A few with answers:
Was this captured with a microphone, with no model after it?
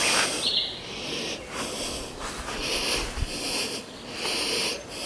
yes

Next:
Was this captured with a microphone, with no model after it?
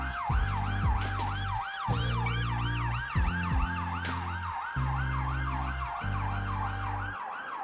yes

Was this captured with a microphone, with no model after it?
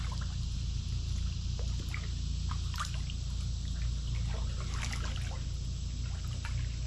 yes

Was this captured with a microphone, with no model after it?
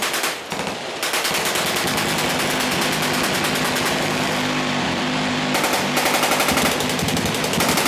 yes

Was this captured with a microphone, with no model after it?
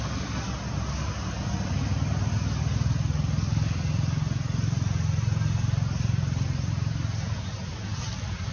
yes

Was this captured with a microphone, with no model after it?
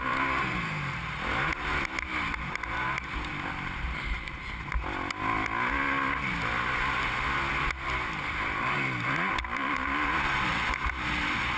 yes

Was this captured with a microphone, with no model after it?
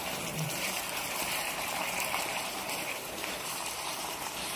no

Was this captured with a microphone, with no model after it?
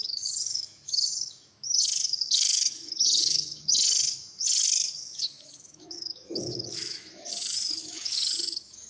no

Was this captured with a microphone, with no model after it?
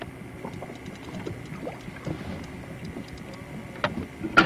yes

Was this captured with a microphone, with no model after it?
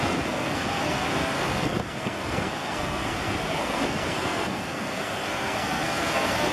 no